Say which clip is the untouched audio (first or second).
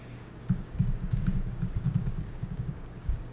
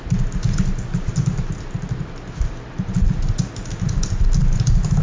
second